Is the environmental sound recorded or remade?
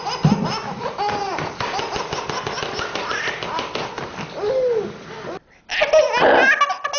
recorded